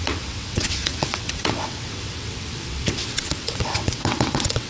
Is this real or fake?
fake